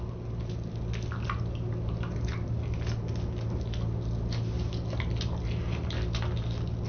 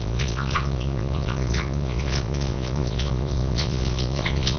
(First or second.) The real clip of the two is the first